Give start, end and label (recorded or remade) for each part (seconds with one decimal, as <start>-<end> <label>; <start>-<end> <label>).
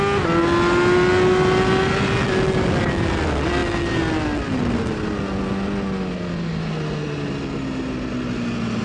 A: 0.0-8.8 recorded